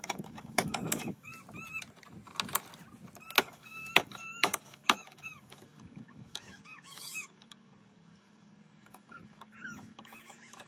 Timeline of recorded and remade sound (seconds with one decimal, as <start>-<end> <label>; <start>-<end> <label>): 0.0-1.3 remade; 1.3-3.4 recorded; 3.4-10.7 remade